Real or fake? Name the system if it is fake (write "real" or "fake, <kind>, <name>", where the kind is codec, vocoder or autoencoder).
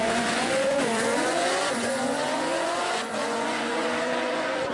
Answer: fake, vocoder, Vocos